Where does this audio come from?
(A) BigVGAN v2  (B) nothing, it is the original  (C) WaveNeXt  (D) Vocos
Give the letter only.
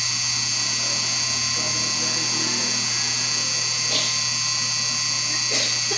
B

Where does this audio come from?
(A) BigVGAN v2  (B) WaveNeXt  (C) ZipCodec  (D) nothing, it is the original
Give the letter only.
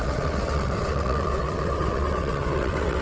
B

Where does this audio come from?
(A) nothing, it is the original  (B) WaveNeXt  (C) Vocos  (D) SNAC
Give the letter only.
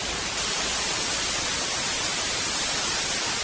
A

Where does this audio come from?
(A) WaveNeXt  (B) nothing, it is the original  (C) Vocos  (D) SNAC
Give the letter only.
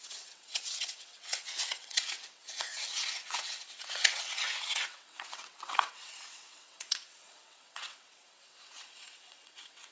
A